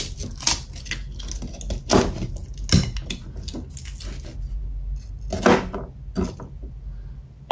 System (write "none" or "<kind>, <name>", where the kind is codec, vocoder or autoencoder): none